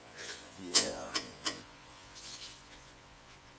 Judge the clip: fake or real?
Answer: fake